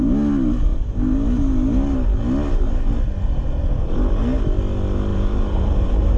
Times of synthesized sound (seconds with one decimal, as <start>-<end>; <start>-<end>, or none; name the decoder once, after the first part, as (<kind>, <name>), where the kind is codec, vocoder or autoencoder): 5.1-6.2 (vocoder, BigVGAN v2)